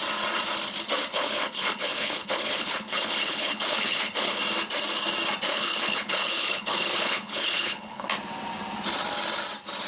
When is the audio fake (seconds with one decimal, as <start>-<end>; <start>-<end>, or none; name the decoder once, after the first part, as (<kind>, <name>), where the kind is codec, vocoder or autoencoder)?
1.1-4.4 (codec, HILCodec); 5.5-8.1

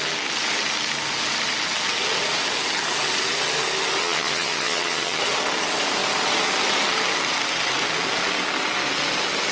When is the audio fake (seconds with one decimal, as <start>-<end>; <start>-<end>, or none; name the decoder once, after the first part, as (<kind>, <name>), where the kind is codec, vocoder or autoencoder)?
4.0-5.2 (vocoder, HiFi-GAN)

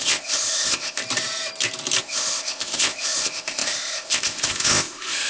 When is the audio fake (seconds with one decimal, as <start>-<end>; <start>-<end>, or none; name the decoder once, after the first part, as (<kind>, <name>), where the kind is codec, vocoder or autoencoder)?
0.0-1.0 (codec, ZipCodec); 2.0-5.3

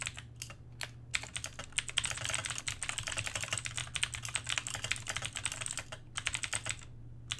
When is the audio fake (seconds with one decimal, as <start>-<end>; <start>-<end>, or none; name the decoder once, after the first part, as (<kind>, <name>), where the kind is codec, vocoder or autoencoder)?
none